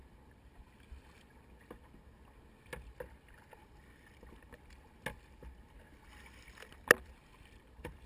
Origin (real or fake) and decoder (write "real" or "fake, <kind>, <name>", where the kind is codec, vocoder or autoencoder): real